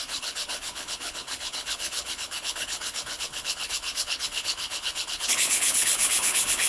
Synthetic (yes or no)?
yes